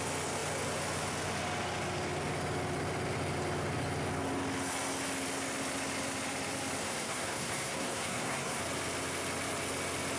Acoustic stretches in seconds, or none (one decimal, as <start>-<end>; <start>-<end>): 0.0-6.8; 8.6-10.2